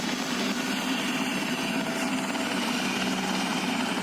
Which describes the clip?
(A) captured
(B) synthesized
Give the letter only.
A